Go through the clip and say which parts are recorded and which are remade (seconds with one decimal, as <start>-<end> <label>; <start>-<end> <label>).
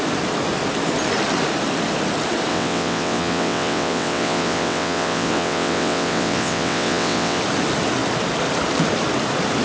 0.0-2.5 recorded; 2.5-7.4 remade; 7.4-9.6 recorded